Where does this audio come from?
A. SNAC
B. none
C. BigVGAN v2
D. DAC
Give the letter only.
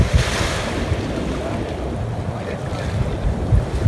B